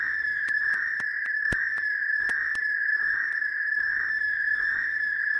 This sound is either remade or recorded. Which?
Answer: remade